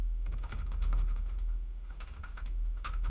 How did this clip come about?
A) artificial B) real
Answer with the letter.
A